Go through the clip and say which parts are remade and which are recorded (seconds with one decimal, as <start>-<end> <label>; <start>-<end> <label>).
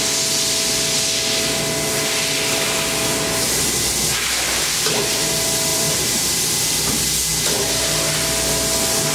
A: 0.0-5.7 recorded; 5.7-6.5 remade; 6.5-9.1 recorded